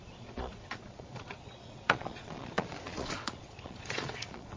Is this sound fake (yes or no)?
yes